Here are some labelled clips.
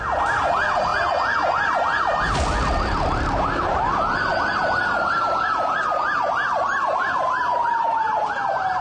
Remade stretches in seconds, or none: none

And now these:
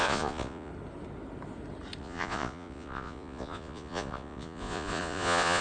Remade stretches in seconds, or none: 0.0-0.7 (vocoder, Vocos); 2.0-5.6

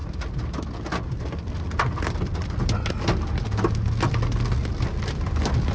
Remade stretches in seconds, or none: none

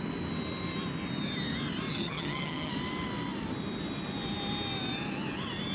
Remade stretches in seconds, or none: 1.9-2.7 (vocoder, HiFi-GAN)

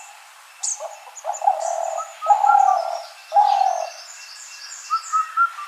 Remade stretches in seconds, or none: 0.0-0.7 (vocoder, BigVGAN v2); 1.4-2.1; 2.8-3.2

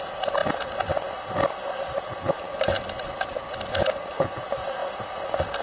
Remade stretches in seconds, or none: none

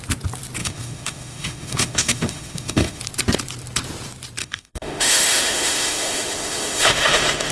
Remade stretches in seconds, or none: 0.6-3.0 (autoencoder, DAC-VAE); 4.4-7.5